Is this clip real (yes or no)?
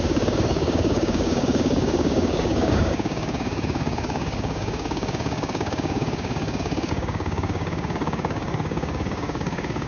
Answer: no